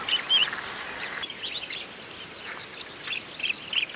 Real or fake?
real